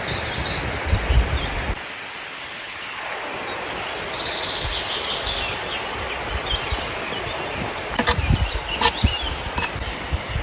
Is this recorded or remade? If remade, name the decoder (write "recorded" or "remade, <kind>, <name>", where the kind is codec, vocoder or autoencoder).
recorded